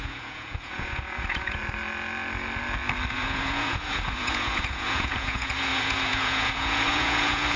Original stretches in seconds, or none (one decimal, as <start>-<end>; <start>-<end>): 1.6-3.1